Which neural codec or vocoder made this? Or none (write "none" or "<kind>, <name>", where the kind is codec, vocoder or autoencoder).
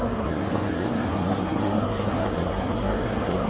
codec, SNAC